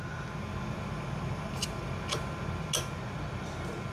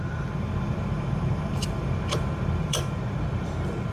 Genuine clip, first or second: first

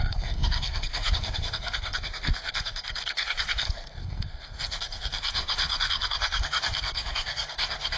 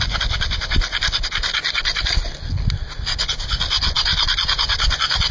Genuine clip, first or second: second